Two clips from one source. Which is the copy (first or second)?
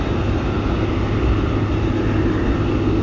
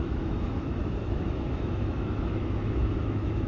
second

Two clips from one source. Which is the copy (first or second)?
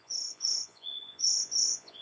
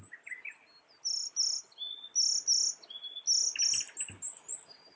first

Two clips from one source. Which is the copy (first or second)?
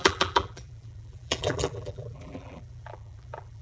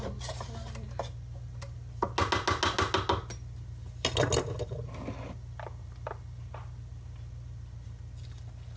first